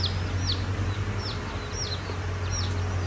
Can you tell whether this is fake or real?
real